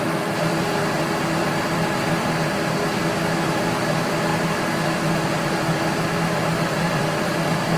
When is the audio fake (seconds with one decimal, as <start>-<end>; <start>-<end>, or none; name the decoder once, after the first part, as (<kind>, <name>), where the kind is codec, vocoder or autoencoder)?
0.0-7.8 (vocoder, BigVGAN v2)